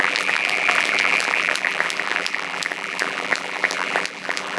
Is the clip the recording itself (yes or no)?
no